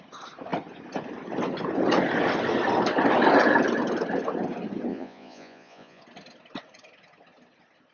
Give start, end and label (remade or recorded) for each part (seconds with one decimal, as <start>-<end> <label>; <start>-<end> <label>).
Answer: 0.0-4.9 recorded; 4.9-6.0 remade; 6.0-7.9 recorded